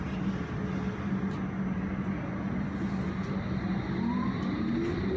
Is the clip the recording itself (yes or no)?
yes